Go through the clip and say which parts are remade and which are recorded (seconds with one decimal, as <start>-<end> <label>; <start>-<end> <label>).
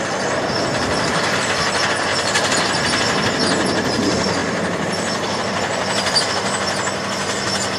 0.0-0.7 recorded; 0.7-1.6 remade; 1.6-2.1 recorded; 2.1-2.8 remade; 2.8-4.4 recorded; 4.4-6.2 remade; 6.2-7.8 recorded